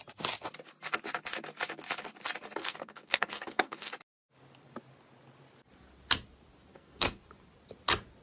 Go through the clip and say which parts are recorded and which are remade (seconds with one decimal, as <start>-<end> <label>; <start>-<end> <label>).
0.0-2.6 recorded; 2.6-3.9 remade; 3.9-6.7 recorded; 6.7-7.2 remade; 7.2-8.2 recorded